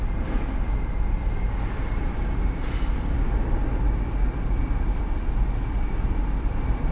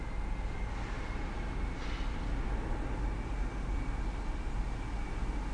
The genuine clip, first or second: second